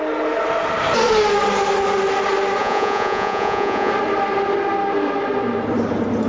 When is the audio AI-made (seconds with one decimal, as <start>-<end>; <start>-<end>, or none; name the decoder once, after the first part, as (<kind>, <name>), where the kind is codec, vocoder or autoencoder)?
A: 2.6-3.9 (vocoder, Vocos)